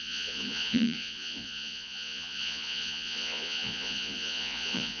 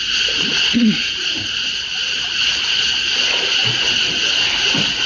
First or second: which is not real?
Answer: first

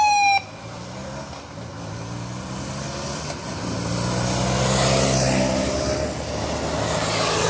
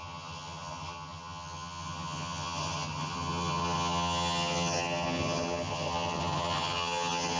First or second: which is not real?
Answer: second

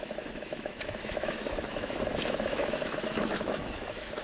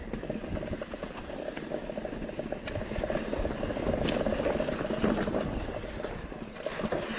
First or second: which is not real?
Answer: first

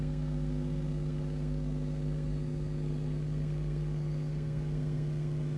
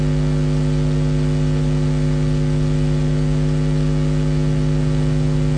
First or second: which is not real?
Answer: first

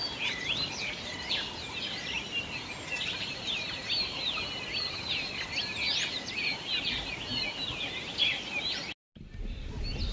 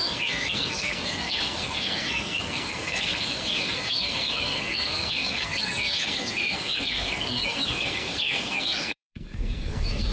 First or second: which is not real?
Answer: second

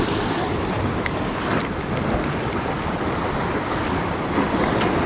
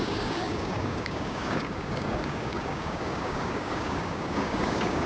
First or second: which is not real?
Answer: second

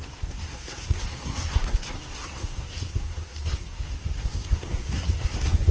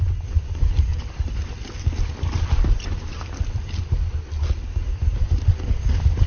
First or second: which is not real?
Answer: first